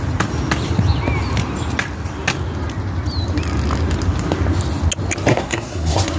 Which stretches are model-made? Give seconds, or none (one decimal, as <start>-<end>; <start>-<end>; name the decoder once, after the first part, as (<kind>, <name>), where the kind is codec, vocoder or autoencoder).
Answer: 5.3-6.2 (codec, SNAC)